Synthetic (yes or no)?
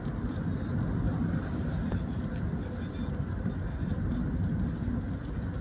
no